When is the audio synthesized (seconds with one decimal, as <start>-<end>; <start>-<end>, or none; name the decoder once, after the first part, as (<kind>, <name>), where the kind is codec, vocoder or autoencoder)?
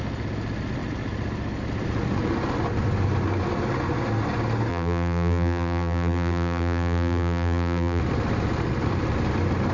4.7-8.0 (vocoder, BigVGAN v2)